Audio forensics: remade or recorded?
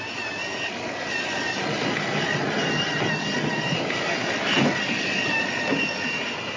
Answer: recorded